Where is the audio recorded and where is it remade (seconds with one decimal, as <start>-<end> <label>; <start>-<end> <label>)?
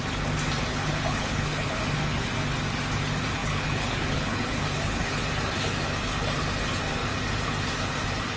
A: 0.0-0.7 recorded; 0.7-1.8 remade; 1.8-3.4 recorded; 3.4-5.2 remade; 5.2-8.4 recorded